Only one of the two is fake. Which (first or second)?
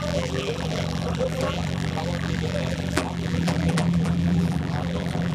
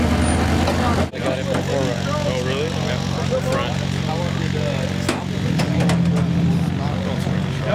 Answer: first